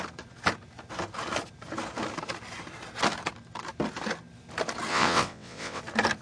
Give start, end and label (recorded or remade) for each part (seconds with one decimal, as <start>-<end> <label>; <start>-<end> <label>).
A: 0.0-4.9 recorded; 4.9-5.8 remade; 5.8-6.2 recorded